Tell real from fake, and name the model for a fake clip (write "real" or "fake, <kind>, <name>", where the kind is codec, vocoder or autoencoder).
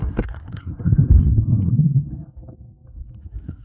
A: fake, codec, SNAC